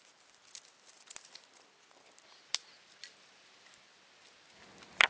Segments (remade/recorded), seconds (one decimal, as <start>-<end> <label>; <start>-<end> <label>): 0.0-5.1 recorded